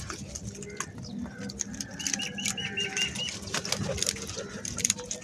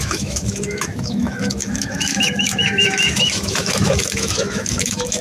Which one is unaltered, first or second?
first